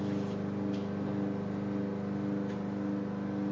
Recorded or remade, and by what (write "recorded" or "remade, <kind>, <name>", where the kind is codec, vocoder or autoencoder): recorded